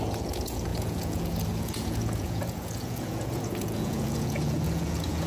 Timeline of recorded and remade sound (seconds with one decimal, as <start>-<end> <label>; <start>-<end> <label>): 0.0-5.3 remade

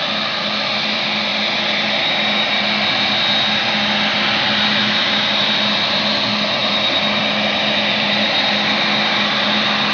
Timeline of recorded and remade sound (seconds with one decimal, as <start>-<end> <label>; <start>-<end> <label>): 0.0-7.9 recorded; 7.9-8.5 remade; 8.5-9.9 recorded

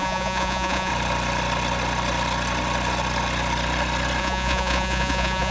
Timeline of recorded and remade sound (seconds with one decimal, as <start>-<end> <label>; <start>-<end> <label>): 0.0-0.9 remade; 0.9-4.2 recorded; 4.2-5.5 remade